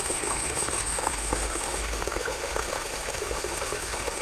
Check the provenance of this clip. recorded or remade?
remade